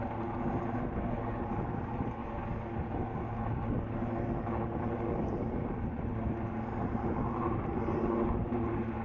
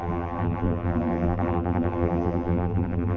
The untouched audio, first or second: first